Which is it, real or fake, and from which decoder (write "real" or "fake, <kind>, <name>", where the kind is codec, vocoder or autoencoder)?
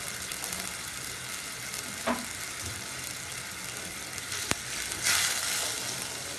real